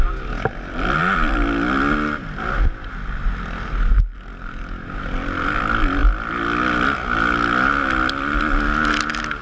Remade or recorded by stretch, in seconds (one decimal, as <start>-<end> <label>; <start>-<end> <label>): 0.0-9.4 recorded